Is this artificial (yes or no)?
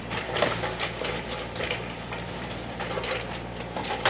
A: yes